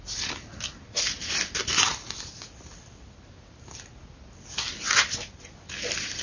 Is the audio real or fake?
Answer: real